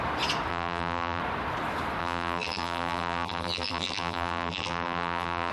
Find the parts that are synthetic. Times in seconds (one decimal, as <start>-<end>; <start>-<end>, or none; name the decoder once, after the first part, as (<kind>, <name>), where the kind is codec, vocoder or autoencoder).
0.5-1.2 (vocoder, BigVGAN v2); 2.0-5.5